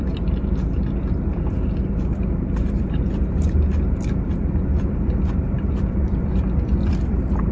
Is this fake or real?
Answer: fake